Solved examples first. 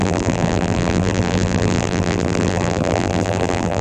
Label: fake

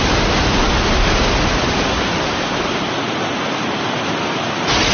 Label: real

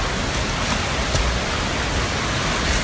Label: real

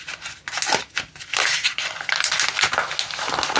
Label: real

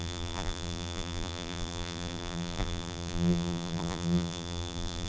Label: fake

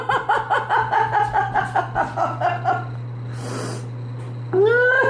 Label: real